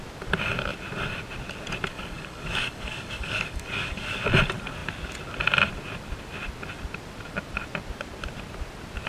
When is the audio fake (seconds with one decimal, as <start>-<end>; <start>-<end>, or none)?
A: 1.9-4.2